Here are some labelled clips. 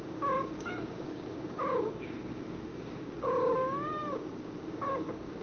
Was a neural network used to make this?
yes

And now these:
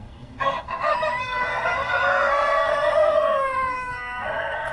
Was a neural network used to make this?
yes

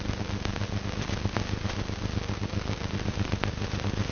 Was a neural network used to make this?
no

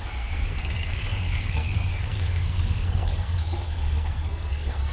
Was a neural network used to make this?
yes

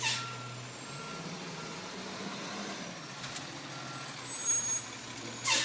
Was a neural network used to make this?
no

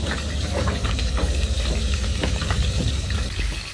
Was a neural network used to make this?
yes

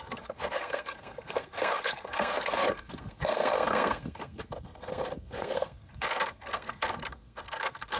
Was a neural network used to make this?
yes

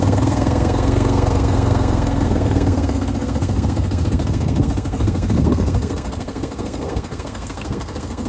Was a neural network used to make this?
yes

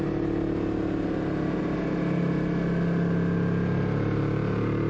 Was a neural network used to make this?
no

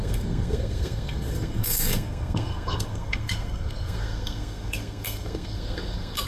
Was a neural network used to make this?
yes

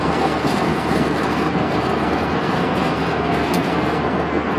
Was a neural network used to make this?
yes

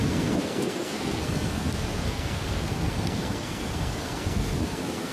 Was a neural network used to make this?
yes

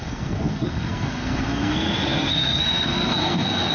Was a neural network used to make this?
yes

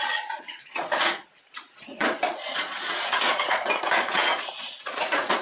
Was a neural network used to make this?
yes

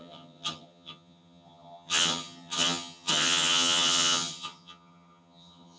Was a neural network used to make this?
yes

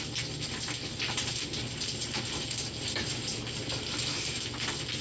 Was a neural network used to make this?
no